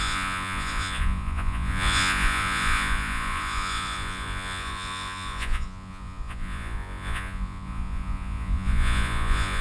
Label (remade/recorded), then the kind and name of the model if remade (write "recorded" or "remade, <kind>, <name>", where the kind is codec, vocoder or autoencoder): remade, vocoder, Vocos